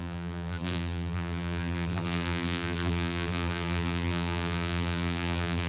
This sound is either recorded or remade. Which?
remade